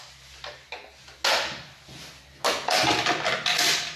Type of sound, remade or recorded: recorded